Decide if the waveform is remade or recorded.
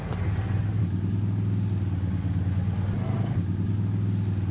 recorded